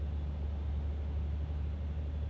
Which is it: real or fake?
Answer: real